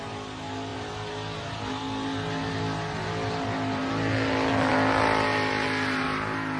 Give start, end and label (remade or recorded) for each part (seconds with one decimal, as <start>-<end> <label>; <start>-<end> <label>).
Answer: 0.0-6.6 recorded

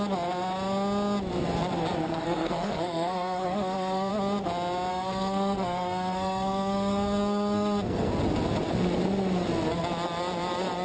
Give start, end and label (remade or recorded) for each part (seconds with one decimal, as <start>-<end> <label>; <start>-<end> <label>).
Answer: 0.0-2.0 recorded; 2.0-4.1 remade; 4.1-4.9 recorded; 4.9-8.1 remade; 8.1-10.8 recorded

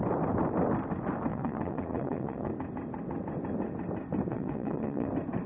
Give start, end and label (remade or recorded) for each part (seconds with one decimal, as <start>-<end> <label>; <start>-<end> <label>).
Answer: 0.0-1.3 recorded; 1.3-2.5 remade; 2.5-4.3 recorded; 4.3-5.1 remade; 5.1-5.5 recorded

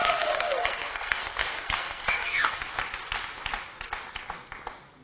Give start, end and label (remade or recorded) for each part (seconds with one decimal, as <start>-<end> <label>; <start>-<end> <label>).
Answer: 0.0-2.6 remade; 2.6-5.0 recorded

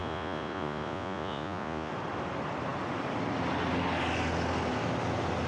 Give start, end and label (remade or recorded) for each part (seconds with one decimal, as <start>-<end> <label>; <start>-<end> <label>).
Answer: 0.0-1.9 remade; 1.9-5.5 recorded

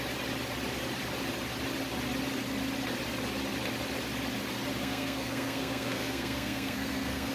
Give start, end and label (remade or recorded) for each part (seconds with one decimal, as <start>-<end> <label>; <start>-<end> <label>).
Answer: 0.0-4.8 recorded; 4.8-7.3 remade

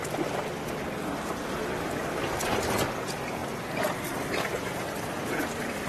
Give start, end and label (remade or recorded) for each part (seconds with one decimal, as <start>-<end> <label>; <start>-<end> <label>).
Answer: 0.0-0.6 recorded; 0.6-3.4 remade; 3.4-3.9 recorded; 3.9-5.9 remade

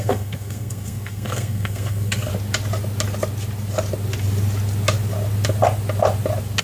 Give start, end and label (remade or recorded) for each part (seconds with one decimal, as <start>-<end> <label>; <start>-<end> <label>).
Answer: 0.0-2.3 remade; 2.3-6.6 recorded